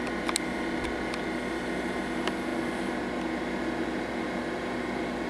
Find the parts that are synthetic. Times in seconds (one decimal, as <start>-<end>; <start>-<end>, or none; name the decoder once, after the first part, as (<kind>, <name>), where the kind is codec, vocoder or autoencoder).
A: none